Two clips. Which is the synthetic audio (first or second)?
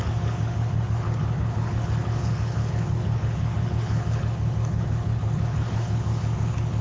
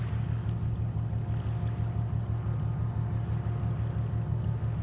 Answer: first